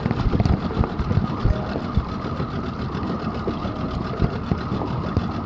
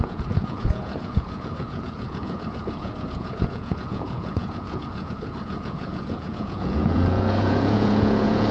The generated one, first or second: second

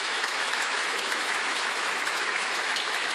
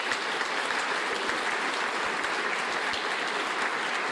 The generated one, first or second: first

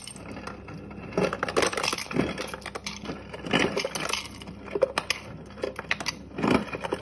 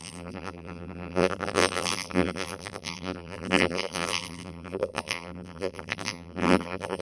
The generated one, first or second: second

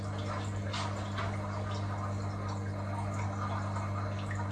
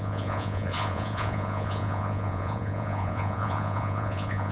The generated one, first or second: second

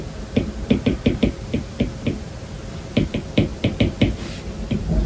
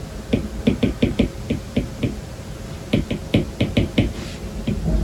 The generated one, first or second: first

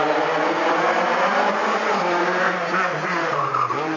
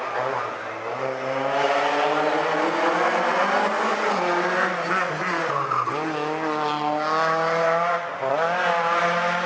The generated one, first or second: first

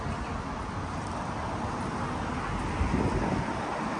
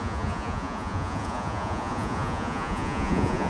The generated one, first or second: second